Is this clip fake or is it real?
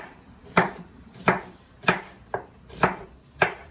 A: fake